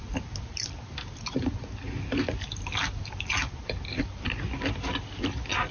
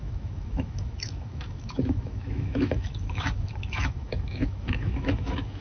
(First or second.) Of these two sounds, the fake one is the second